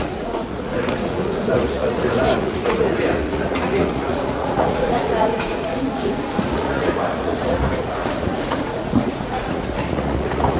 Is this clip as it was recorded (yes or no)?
no